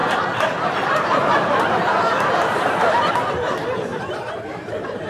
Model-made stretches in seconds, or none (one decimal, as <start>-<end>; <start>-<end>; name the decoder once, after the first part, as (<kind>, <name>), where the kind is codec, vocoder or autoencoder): 0.0-3.1 (vocoder, BigVGAN v2); 3.9-5.1